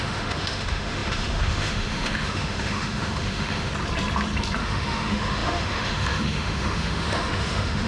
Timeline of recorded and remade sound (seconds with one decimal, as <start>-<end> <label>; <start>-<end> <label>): 0.0-3.7 remade; 3.7-4.6 recorded; 4.6-7.9 remade